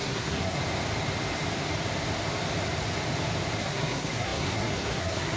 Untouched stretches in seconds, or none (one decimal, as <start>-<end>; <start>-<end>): 0.6-3.6